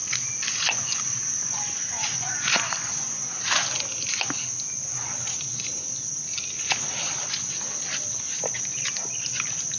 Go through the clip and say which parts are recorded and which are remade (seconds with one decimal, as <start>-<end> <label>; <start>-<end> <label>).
0.0-3.2 remade; 3.2-9.8 recorded